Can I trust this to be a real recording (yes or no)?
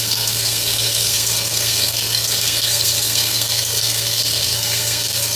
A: no